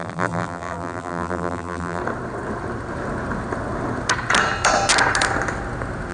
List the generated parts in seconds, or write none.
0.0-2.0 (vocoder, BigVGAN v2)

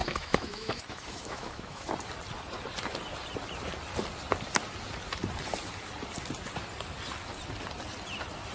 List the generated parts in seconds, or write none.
0.0-1.9 (autoencoder, DAC-VAE)

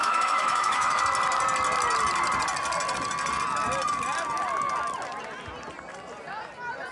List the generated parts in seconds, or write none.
0.0-1.0 (autoencoder, DAC-VAE)

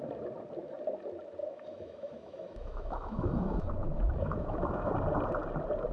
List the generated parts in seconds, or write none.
1.4-4.9 (autoencoder, DAC-VAE)